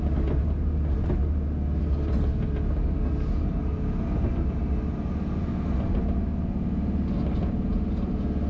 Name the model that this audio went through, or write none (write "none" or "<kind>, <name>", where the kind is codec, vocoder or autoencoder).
none